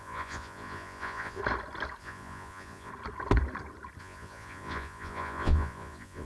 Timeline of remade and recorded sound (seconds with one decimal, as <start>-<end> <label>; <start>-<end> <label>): 0.0-1.4 remade; 1.4-2.0 recorded; 2.0-2.9 remade; 2.9-4.0 recorded; 4.0-6.3 remade